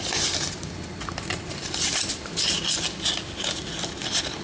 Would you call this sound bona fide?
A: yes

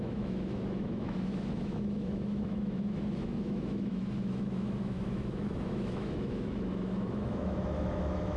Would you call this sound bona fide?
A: no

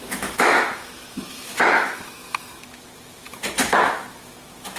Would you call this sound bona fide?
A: no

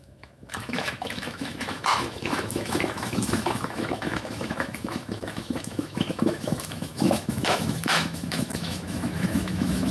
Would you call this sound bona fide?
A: no